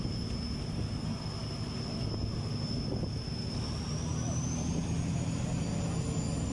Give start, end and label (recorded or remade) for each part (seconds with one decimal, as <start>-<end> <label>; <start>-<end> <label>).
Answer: 0.0-6.5 recorded